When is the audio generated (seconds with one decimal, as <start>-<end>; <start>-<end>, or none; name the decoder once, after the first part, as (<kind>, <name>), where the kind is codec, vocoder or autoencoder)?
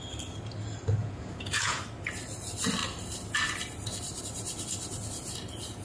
1.0-1.8 (vocoder, Vocos)